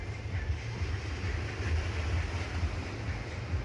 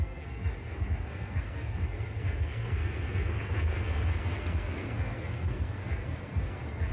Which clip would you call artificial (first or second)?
second